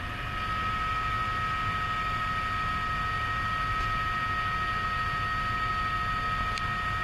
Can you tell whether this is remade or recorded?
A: recorded